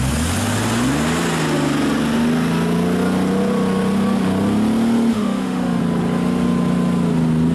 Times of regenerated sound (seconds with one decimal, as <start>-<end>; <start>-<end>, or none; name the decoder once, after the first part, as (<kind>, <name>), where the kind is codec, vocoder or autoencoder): 5.1-5.8 (autoencoder, DAC-VAE)